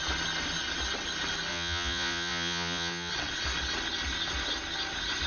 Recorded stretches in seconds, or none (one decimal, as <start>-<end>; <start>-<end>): 0.0-1.5; 3.1-5.3